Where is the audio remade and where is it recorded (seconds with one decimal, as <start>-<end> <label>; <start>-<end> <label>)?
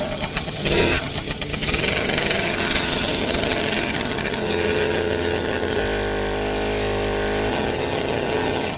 0.0-5.8 remade; 5.8-7.5 recorded; 7.5-8.8 remade